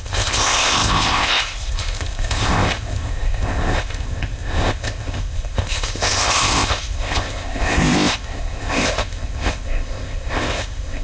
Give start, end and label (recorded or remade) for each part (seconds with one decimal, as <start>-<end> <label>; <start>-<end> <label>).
0.0-11.0 remade